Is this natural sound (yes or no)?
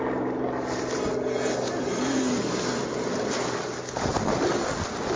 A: yes